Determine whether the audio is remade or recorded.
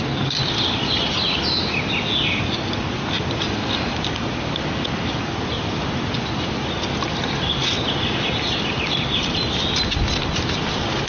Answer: recorded